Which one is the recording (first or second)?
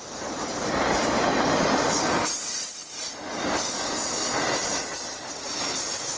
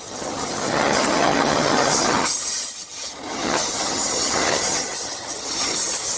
first